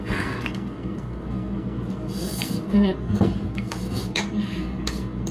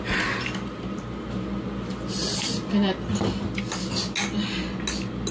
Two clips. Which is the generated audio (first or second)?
first